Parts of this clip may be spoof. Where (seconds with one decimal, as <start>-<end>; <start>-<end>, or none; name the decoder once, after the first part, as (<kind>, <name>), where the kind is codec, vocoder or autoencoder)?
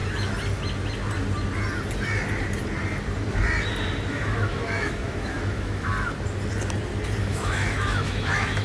4.1-5.9 (autoencoder, DAC-VAE); 7.2-8.6